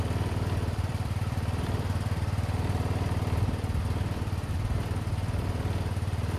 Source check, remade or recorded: remade